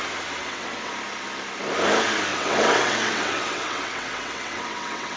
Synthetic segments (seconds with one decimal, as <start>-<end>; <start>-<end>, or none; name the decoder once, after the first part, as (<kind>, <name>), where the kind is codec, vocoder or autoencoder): 0.4-0.9 (vocoder, WaveNeXt); 2.3-5.2